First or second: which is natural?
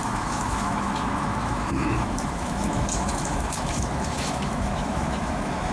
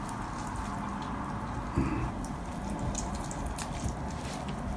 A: second